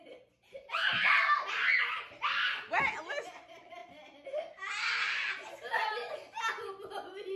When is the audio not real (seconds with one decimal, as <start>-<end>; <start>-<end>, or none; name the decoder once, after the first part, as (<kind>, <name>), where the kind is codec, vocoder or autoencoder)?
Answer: none